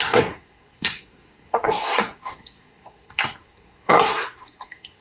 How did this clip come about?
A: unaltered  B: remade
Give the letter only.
B